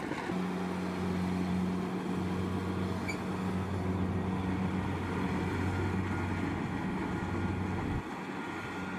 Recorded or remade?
recorded